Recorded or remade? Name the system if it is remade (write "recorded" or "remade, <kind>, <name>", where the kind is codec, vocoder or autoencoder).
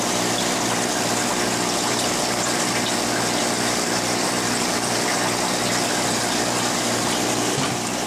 recorded